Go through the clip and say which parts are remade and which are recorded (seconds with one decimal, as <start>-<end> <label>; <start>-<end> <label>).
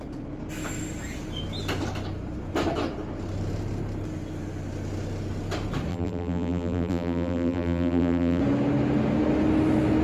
0.0-5.9 recorded; 5.9-8.4 remade; 8.4-10.0 recorded